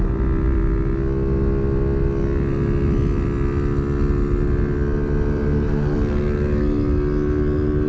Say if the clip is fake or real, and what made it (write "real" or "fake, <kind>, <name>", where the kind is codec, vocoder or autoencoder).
real